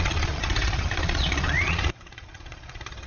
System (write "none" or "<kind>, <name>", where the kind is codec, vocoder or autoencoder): vocoder, Vocos